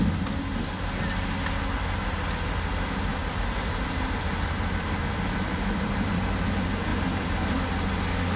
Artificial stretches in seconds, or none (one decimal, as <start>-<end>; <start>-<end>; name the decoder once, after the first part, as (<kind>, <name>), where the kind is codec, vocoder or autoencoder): 3.1-6.2 (vocoder, BigVGAN v2); 6.9-7.6